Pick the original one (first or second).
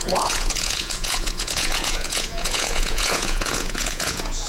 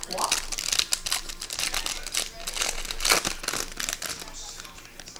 second